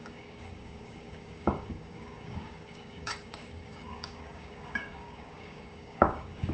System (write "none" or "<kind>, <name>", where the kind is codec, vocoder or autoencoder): codec, DAC